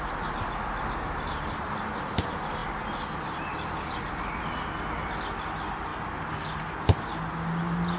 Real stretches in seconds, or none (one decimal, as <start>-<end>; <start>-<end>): 0.0-8.0